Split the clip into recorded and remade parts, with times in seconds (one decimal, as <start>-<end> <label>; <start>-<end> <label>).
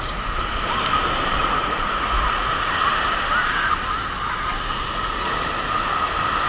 0.0-1.6 recorded; 1.6-2.7 remade; 2.7-6.5 recorded